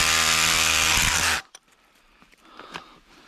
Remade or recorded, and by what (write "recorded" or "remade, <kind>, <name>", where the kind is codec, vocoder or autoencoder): recorded